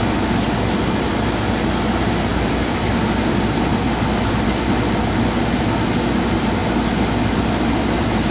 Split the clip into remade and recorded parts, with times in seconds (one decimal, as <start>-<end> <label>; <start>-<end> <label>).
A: 0.0-2.3 recorded; 2.3-4.0 remade; 4.0-6.6 recorded; 6.6-8.3 remade